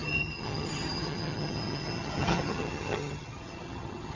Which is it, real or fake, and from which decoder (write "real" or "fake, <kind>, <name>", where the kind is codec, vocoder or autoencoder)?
fake, vocoder, HiFi-GAN